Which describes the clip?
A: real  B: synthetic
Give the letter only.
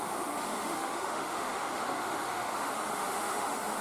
B